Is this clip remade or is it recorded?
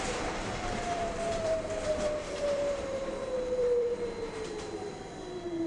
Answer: remade